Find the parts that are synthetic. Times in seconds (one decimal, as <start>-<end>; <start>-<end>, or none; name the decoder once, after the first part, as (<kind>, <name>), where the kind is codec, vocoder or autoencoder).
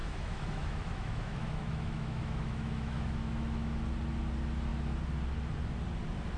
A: 0.0-3.8 (autoencoder, DAC-VAE)